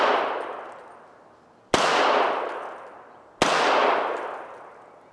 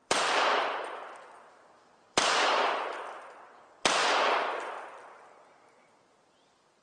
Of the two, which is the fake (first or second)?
second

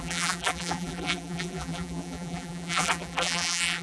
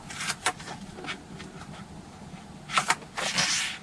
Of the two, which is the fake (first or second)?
first